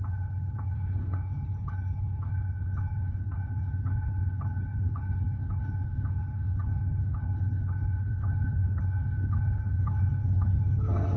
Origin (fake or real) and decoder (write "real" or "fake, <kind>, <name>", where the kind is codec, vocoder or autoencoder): fake, codec, HILCodec